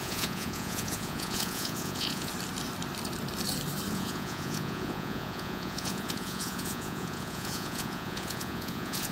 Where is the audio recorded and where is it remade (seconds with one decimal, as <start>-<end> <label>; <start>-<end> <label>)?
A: 0.0-2.3 remade; 2.3-3.9 recorded; 3.9-9.1 remade